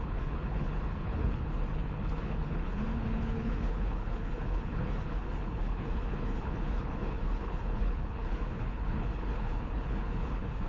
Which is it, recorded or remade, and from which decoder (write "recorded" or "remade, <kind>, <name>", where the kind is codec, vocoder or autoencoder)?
remade, codec, HILCodec